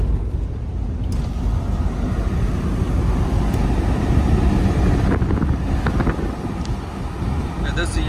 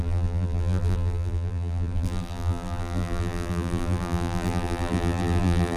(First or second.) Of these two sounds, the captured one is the first